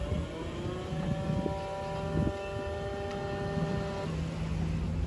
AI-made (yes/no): no